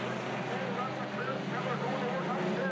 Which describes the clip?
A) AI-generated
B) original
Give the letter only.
B